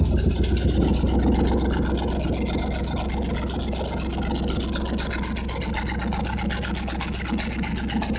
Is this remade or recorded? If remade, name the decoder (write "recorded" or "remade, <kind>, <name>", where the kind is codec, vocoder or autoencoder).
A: recorded